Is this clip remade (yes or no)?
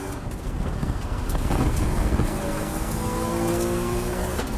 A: yes